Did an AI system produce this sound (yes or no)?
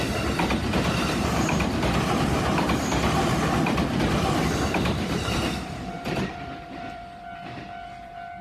yes